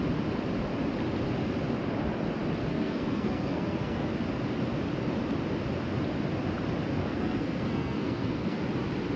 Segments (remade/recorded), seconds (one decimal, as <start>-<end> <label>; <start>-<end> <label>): 0.0-2.6 recorded; 2.6-4.1 remade; 4.1-7.0 recorded; 7.0-8.6 remade; 8.6-9.2 recorded